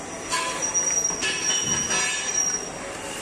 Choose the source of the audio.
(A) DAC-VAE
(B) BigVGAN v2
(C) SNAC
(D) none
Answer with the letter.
D